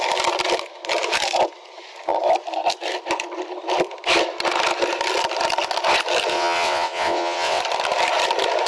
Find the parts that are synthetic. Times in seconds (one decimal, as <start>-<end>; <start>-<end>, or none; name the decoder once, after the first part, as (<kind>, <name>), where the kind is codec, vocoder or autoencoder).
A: 6.3-7.6 (vocoder, WaveNeXt)